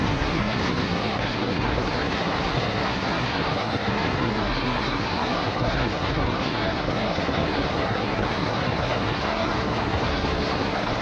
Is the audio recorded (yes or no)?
no